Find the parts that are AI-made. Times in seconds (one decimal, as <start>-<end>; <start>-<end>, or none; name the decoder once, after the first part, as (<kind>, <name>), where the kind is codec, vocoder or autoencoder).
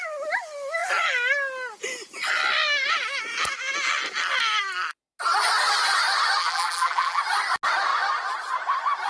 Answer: 6.4-7.2 (vocoder, BigVGAN v2)